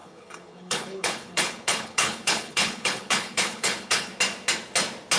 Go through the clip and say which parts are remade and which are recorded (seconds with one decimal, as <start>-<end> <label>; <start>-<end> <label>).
0.0-4.1 remade; 4.1-5.2 recorded